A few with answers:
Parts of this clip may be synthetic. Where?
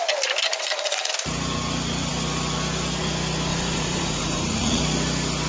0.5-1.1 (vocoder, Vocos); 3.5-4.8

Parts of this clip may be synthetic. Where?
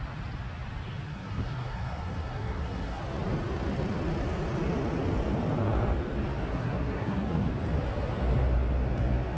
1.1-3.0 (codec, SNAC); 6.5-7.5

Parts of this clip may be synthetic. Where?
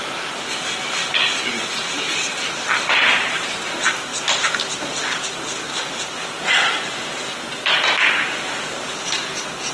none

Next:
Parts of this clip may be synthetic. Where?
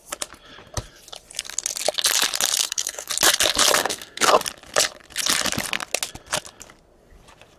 2.6-3.1 (codec, SNAC); 3.8-4.4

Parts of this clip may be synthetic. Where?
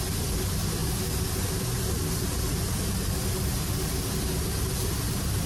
none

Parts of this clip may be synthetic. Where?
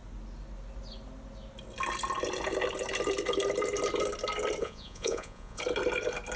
4.6-5.6 (vocoder, Vocos)